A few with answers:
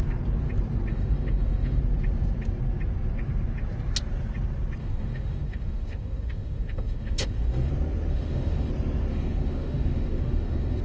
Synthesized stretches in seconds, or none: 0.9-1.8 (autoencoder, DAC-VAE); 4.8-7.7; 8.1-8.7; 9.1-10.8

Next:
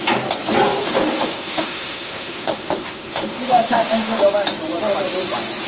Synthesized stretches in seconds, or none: 0.8-4.2 (autoencoder, DAC-VAE)

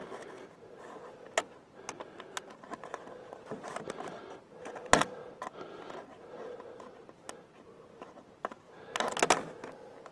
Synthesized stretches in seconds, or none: none

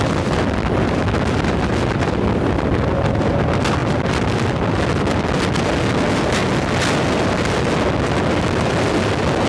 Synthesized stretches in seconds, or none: none